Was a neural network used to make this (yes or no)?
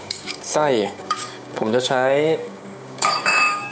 yes